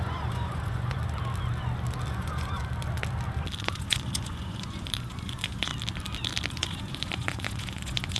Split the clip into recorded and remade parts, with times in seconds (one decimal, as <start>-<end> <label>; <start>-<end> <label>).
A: 0.0-1.0 remade; 1.0-2.1 recorded; 2.1-2.6 remade; 2.6-3.6 recorded; 3.6-5.7 remade; 5.7-6.5 recorded; 6.5-8.2 remade